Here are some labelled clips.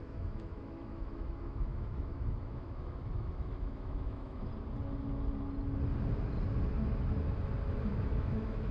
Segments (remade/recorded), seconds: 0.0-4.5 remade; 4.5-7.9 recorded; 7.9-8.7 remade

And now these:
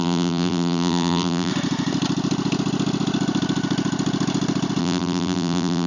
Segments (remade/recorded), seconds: 0.0-1.5 remade; 1.5-4.8 recorded; 4.8-5.9 remade

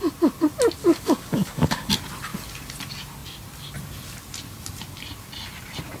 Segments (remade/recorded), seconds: 0.0-0.8 recorded; 0.8-1.9 remade; 1.9-6.0 recorded

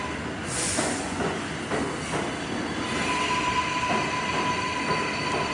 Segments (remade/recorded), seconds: 0.0-0.4 recorded; 0.4-1.5 remade; 1.5-5.5 recorded

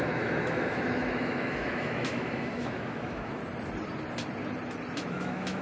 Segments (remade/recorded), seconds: 0.0-3.4 remade; 3.4-5.1 recorded; 5.1-5.6 remade

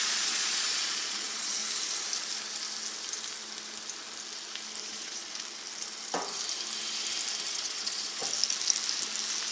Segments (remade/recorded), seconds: 0.0-1.6 remade; 1.6-4.8 recorded; 4.8-5.2 remade; 5.2-7.5 recorded; 7.5-8.2 remade; 8.2-9.5 recorded

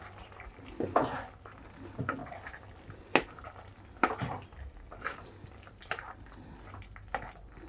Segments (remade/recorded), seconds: 0.0-7.7 recorded